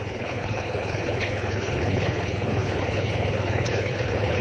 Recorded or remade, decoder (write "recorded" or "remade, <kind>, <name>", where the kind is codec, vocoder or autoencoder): remade, codec, HILCodec